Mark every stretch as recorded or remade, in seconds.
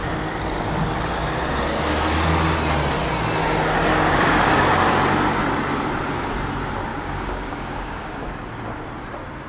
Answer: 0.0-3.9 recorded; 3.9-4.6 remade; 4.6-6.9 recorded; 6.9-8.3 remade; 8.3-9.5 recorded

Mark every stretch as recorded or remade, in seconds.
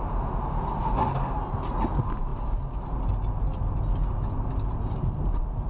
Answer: 0.0-5.7 recorded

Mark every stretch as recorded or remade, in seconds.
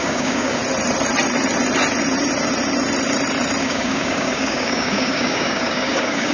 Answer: 0.0-0.6 remade; 0.6-3.6 recorded; 3.6-6.3 remade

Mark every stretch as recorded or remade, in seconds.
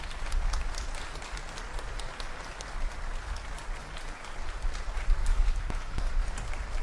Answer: 0.0-5.2 recorded; 5.2-6.1 remade; 6.1-6.8 recorded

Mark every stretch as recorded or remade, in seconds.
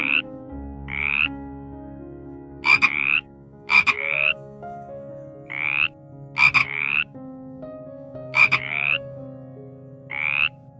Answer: 0.0-5.1 remade; 5.1-6.6 recorded; 6.6-9.2 remade; 9.2-10.8 recorded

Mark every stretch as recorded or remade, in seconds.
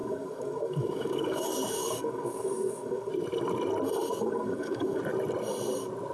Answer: 0.0-3.1 remade; 3.1-4.1 recorded; 4.1-5.0 remade; 5.0-6.1 recorded